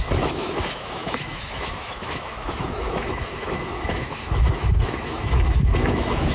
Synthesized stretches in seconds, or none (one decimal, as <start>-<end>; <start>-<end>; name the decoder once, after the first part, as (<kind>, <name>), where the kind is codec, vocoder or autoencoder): 0.0-6.3 (autoencoder, DAC-VAE)